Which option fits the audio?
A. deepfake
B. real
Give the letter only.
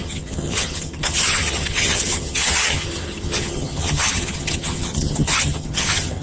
A